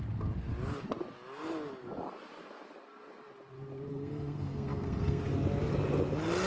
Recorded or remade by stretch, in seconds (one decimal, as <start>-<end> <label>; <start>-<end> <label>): 0.0-3.9 recorded; 3.9-5.2 remade; 5.2-6.5 recorded